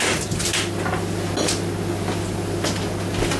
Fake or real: real